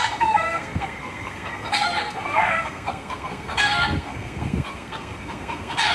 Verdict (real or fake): fake